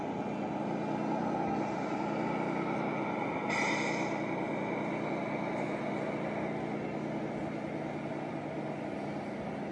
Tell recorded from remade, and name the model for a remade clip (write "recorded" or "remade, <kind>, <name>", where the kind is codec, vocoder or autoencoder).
recorded